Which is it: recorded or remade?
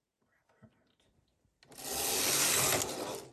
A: recorded